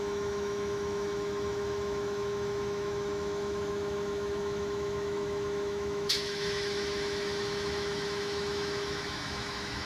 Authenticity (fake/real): fake